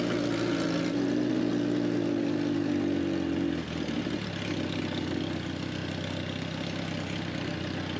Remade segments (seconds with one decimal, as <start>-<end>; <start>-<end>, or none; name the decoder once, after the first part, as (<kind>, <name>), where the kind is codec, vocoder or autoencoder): none